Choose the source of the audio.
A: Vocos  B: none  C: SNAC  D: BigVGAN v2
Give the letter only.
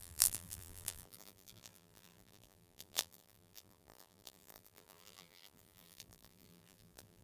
D